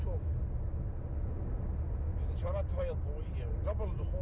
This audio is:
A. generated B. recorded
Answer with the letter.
B